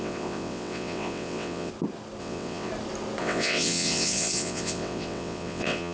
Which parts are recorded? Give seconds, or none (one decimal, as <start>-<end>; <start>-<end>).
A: 1.7-2.2; 2.7-3.2